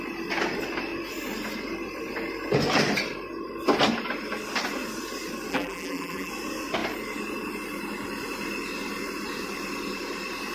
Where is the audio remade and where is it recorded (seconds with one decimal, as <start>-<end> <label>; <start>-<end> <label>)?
0.0-5.5 recorded; 5.5-6.3 remade; 6.3-10.5 recorded

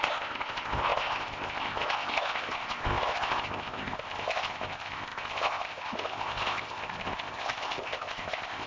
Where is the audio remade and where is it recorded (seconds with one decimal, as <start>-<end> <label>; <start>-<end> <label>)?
0.0-8.7 remade